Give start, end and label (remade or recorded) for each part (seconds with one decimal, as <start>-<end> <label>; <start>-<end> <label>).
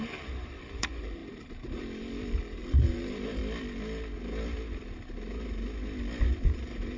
0.0-3.4 remade; 3.4-6.5 recorded; 6.5-7.0 remade